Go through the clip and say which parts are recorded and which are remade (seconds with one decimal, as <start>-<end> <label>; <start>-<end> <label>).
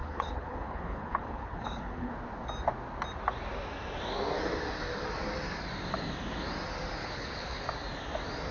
0.0-2.1 remade; 2.1-7.0 recorded; 7.0-7.6 remade; 7.6-8.5 recorded